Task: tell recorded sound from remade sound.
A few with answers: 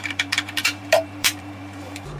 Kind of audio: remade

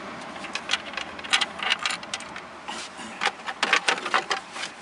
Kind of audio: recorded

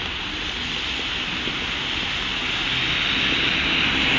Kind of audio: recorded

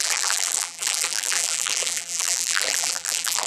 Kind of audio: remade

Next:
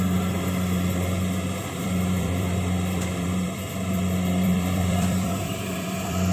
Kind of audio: remade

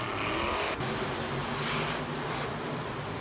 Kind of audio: recorded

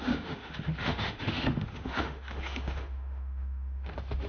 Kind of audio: remade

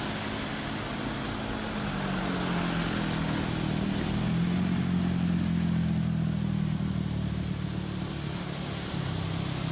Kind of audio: recorded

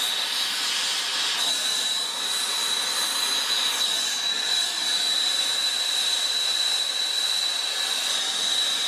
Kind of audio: recorded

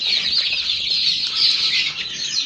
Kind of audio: recorded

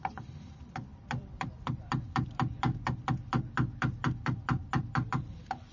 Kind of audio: remade